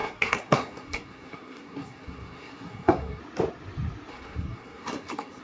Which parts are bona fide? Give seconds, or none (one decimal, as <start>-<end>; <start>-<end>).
3.2-4.1